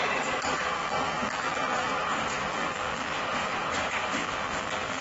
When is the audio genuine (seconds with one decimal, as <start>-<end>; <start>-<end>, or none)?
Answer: 0.0-0.8; 1.9-2.5; 3.2-4.2